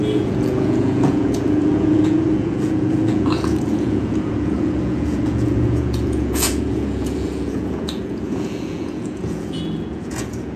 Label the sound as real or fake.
fake